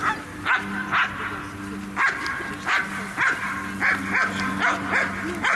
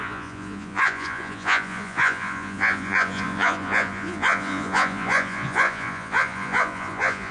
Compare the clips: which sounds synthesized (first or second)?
second